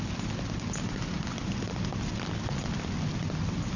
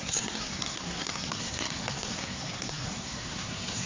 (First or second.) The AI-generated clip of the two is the second